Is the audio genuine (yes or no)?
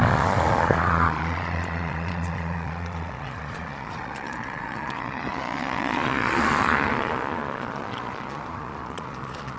no